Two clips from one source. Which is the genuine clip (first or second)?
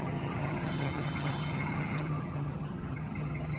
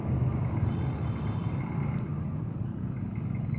second